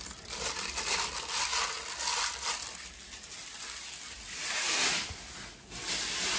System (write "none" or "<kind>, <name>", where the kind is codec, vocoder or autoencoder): none